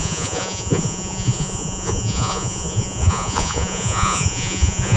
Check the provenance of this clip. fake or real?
fake